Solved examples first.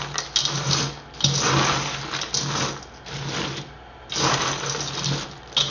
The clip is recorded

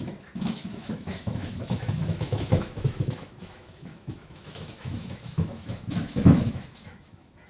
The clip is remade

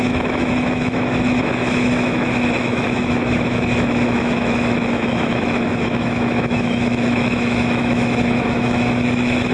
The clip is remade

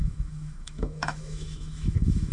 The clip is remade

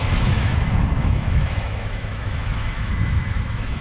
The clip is remade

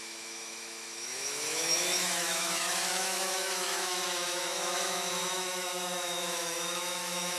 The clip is remade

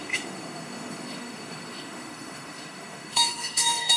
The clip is remade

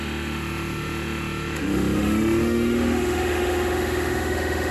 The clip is remade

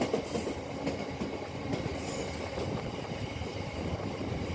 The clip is recorded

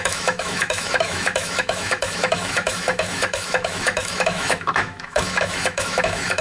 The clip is remade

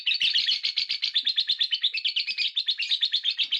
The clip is recorded